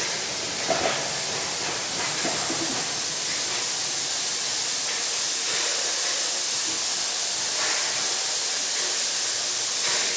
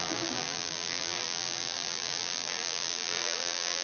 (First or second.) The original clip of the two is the first